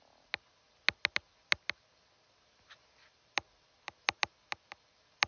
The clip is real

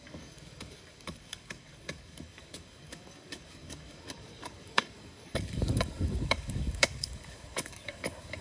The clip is fake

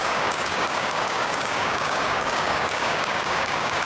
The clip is fake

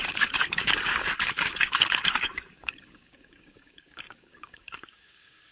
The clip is fake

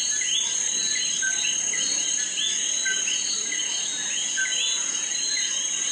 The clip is real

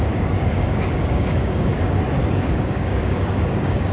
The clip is fake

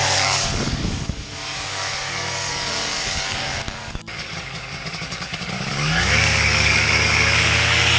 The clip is fake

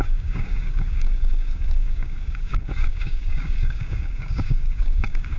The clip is fake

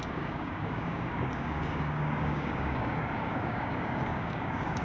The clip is fake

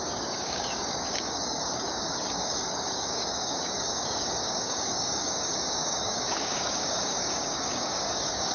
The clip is fake